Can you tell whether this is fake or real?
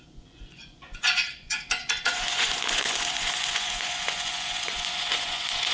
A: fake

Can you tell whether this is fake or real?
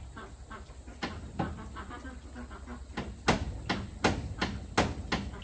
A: real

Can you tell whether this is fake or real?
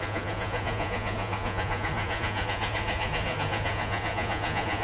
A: fake